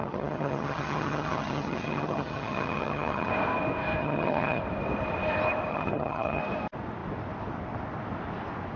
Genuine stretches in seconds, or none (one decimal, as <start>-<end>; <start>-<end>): 3.3-4.0; 4.6-5.7; 6.4-8.8